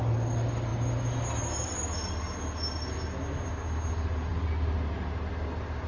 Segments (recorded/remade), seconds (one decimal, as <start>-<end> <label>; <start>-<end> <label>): 0.0-5.9 recorded